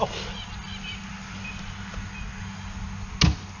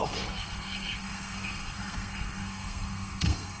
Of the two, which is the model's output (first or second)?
second